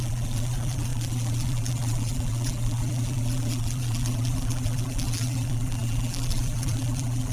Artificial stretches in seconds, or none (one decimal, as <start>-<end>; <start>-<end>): 0.0-7.3